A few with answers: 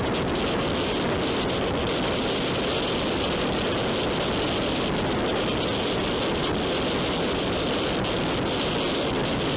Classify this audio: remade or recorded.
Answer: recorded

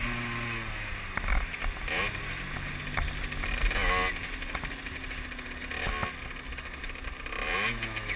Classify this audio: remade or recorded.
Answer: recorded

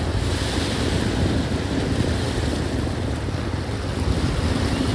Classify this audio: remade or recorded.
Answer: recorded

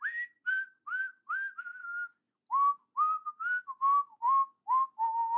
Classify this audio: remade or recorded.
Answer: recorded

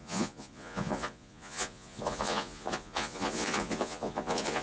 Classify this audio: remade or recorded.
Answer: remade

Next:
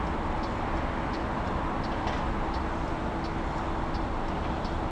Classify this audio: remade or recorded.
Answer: recorded